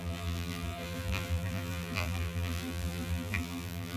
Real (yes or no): no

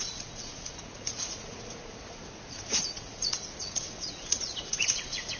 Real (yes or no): no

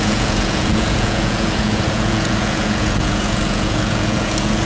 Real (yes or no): no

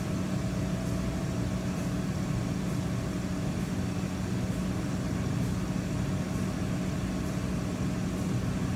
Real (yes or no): yes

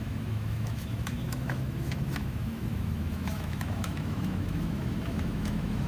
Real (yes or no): no